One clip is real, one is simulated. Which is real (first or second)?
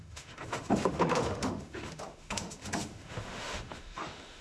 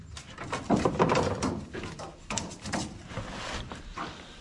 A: second